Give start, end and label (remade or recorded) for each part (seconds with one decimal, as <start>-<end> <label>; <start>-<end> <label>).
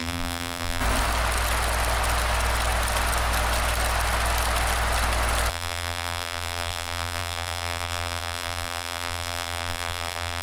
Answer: 0.0-0.8 remade; 0.8-5.5 recorded; 5.5-10.4 remade